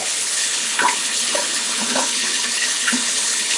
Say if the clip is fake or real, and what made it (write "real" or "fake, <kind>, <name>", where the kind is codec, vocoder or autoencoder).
fake, codec, HILCodec